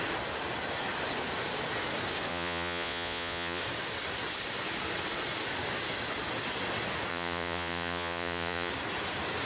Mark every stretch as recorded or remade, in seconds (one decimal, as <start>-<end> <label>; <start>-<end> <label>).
0.0-2.3 recorded; 2.3-3.6 remade; 3.6-7.1 recorded; 7.1-8.7 remade; 8.7-9.5 recorded